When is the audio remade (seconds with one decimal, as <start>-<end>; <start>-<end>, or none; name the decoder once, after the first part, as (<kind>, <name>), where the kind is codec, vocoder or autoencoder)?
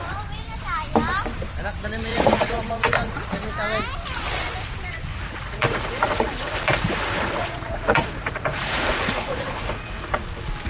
2.1-3.1 (vocoder, Vocos); 5.1-10.2